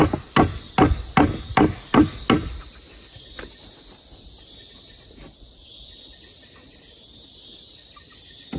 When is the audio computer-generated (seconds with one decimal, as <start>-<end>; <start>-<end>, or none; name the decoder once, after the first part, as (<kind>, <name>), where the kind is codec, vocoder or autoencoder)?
none